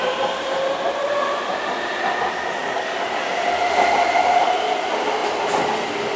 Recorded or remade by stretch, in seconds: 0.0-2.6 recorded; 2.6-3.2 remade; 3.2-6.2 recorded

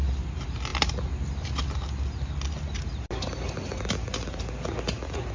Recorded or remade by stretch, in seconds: 0.0-5.3 recorded